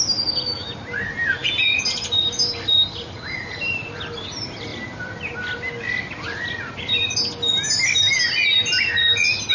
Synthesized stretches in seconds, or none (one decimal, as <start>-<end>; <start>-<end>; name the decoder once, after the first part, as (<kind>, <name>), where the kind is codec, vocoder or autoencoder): none